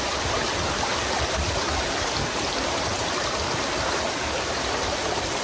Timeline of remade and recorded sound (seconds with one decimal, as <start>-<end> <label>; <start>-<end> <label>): 0.0-5.4 recorded